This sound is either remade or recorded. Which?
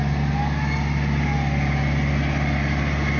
recorded